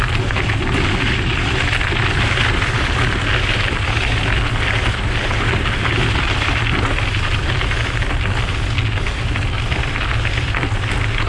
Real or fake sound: real